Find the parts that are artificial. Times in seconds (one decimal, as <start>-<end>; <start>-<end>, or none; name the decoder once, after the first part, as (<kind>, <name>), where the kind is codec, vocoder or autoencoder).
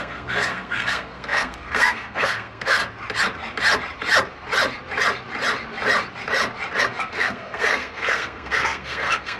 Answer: 0.0-2.8 (codec, SNAC); 6.8-9.4